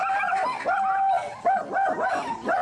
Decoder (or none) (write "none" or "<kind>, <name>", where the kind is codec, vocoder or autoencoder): none